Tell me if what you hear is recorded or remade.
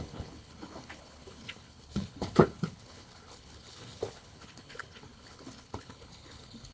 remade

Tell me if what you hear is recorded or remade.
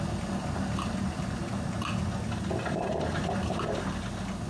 recorded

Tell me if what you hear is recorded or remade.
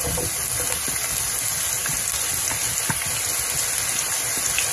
recorded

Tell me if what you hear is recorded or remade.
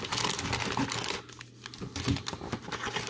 recorded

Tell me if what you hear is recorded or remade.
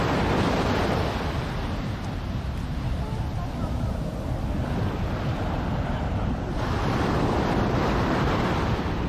recorded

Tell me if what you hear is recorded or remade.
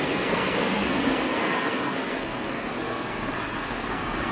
remade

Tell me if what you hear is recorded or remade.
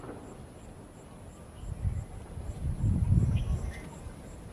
recorded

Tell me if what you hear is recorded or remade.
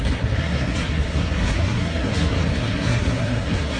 remade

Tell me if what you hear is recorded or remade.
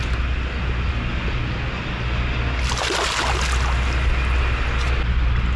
recorded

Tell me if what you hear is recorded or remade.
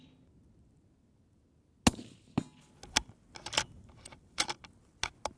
recorded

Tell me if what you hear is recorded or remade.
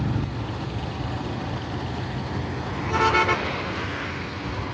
recorded